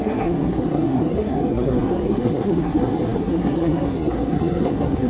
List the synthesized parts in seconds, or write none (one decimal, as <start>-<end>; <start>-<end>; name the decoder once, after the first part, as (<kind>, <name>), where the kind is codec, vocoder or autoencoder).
0.0-5.1 (codec, SNAC)